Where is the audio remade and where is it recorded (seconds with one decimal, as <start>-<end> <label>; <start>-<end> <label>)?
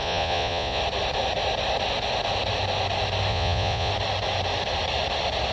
0.0-0.8 remade; 0.8-3.3 recorded; 3.3-3.9 remade; 3.9-5.5 recorded